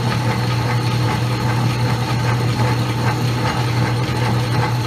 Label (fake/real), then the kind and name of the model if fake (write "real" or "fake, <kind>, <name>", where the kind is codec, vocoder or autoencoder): real